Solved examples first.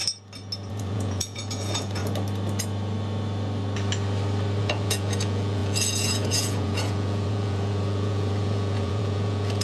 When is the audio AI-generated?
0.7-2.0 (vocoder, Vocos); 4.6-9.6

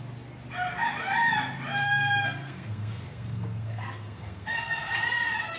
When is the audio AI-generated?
1.8-4.7 (codec, SNAC)

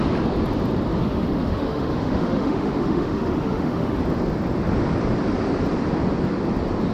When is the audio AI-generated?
1.0-4.0 (autoencoder, DAC-VAE)

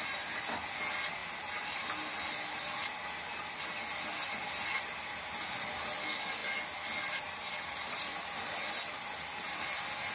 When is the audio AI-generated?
none

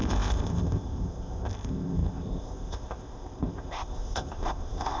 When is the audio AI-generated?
0.0-5.0 (codec, ZipCodec)